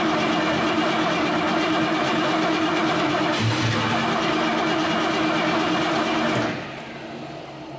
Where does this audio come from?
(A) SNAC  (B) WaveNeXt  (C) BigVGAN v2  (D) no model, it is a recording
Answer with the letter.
D